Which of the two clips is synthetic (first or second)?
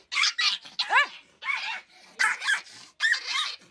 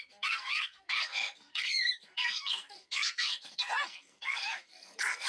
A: second